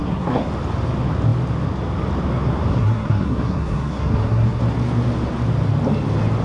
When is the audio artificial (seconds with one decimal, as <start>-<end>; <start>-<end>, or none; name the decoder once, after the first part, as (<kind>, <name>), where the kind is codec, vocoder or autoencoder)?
0.0-0.5 (codec, SNAC); 2.7-4.6